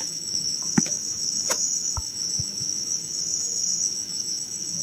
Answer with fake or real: fake